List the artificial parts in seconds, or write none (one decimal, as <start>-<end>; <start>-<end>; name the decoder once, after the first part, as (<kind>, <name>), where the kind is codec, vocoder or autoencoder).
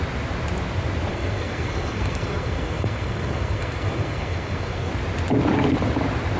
1.1-4.9 (codec, SNAC)